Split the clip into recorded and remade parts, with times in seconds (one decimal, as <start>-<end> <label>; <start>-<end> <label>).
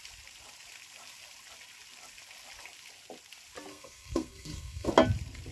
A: 0.0-3.7 recorded; 3.7-4.9 remade; 4.9-5.5 recorded